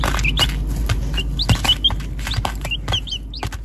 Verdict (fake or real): real